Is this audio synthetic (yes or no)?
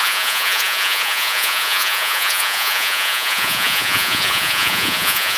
yes